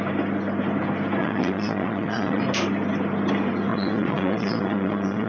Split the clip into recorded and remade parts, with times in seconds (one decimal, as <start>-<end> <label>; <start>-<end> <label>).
0.0-1.2 recorded; 1.2-2.4 remade; 2.4-3.7 recorded; 3.7-5.3 remade